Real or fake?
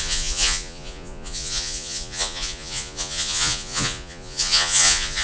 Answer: fake